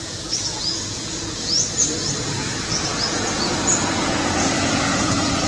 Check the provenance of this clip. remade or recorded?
remade